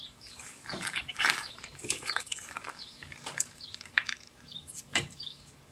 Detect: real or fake fake